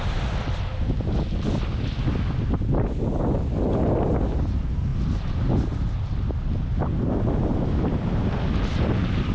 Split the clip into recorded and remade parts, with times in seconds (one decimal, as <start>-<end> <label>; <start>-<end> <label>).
0.0-9.3 recorded